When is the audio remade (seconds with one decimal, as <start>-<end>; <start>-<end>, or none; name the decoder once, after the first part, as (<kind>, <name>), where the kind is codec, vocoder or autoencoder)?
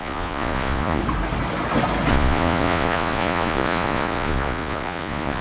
0.0-1.0 (vocoder, Vocos); 2.1-5.4